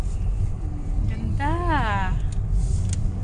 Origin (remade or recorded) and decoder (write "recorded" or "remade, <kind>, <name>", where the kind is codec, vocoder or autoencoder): recorded